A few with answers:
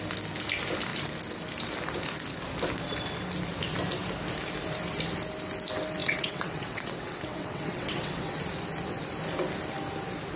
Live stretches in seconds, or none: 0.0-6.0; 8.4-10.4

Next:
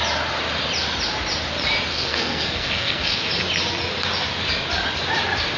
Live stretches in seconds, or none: 0.0-1.9; 3.3-5.6

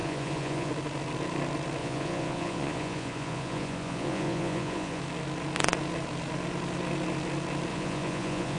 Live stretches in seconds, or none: 0.7-1.8; 5.0-7.7

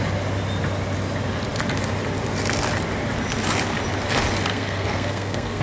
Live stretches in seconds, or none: 0.0-4.5

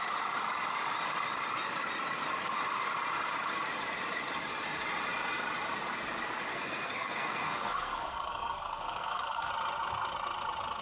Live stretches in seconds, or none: 0.0-6.5; 9.5-10.8